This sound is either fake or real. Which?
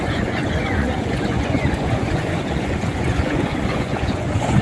fake